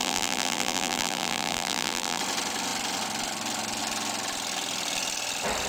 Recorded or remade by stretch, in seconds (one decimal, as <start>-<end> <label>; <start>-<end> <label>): 0.0-2.2 remade; 2.2-5.7 recorded